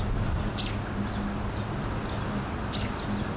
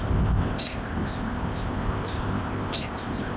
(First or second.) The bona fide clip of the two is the first